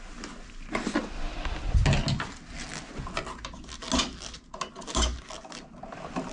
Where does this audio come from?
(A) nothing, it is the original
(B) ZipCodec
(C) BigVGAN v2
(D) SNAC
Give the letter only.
A